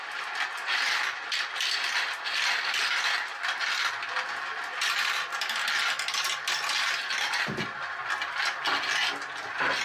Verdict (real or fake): real